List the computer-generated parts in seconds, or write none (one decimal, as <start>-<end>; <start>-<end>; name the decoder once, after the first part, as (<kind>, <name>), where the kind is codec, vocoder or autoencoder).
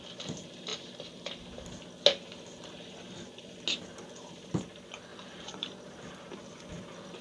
5.1-6.6 (vocoder, BigVGAN v2)